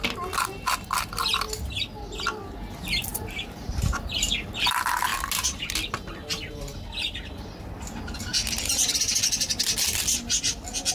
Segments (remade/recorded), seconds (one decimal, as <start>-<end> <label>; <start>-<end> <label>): 0.0-3.1 recorded; 3.1-4.4 remade; 4.4-10.9 recorded